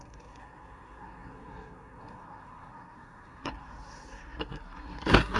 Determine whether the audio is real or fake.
fake